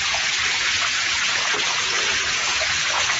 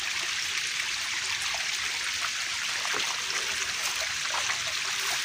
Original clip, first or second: second